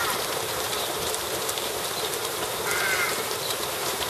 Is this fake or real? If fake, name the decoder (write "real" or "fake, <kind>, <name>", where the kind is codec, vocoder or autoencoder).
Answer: fake, vocoder, BigVGAN v2